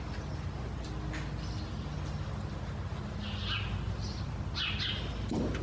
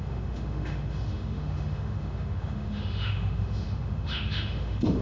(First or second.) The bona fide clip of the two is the first